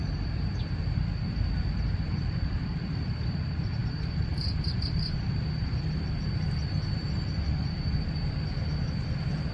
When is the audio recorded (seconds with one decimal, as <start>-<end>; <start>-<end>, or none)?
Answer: none